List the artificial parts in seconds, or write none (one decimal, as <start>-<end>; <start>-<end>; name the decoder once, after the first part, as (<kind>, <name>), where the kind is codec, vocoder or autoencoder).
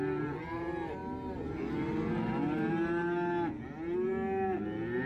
none